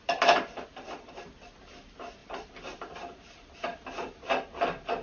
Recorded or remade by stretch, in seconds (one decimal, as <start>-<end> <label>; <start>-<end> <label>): 0.0-2.2 recorded; 2.2-2.9 remade; 2.9-5.0 recorded